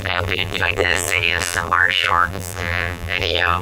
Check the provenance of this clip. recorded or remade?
remade